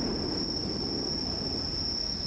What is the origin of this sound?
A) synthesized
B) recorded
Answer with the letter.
B